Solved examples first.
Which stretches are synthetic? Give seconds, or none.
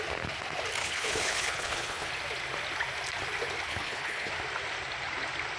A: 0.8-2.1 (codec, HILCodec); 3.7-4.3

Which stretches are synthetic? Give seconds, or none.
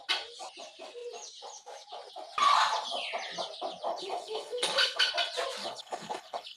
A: 3.9-5.1 (codec, HILCodec); 5.6-6.6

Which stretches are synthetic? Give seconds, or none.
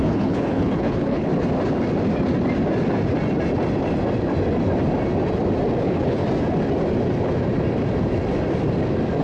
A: 0.0-1.3 (codec, HILCodec); 5.8-6.2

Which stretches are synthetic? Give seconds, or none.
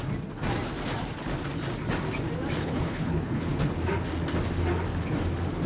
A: 2.6-3.7 (codec, HILCodec)